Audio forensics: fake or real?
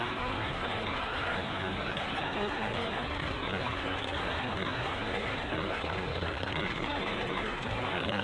fake